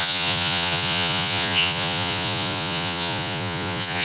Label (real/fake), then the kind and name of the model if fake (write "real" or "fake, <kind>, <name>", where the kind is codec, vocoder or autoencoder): fake, vocoder, Vocos